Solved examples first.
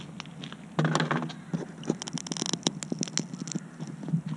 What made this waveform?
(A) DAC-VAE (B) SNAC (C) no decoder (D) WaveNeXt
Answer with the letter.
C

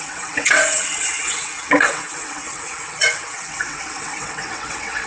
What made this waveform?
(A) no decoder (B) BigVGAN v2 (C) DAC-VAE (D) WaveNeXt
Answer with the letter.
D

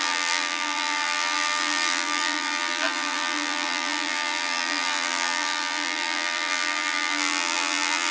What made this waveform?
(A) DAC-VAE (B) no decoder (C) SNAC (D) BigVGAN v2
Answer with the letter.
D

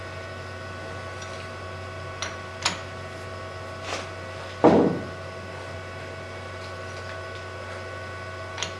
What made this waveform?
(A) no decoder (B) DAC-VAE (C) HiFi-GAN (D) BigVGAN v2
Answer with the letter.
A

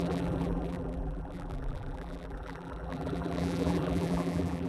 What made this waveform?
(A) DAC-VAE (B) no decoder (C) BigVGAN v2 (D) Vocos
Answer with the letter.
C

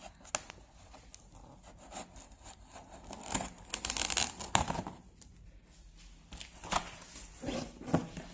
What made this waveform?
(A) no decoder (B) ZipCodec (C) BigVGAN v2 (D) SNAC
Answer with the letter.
A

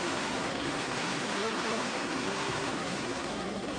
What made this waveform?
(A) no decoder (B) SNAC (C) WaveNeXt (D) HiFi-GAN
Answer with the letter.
B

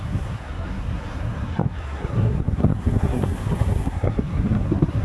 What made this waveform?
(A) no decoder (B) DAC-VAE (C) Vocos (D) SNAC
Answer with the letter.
D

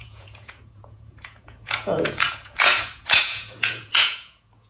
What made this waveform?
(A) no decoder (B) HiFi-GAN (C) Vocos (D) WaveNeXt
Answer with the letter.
C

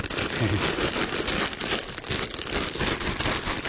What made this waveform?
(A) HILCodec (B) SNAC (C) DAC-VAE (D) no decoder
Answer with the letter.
D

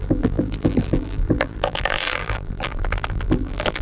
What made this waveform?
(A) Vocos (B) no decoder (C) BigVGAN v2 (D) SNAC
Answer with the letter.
C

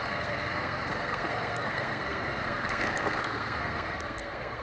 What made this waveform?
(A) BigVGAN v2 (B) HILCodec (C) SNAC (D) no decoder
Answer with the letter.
C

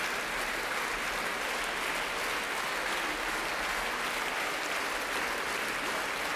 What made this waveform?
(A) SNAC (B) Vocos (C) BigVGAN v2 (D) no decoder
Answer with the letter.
D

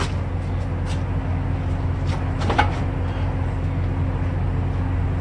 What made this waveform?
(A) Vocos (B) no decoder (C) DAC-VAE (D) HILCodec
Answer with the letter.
B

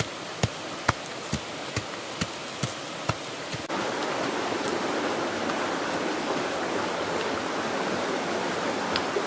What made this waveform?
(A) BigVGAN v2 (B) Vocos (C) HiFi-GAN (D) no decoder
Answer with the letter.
D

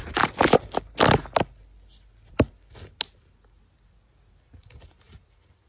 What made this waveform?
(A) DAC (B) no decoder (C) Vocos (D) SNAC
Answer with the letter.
B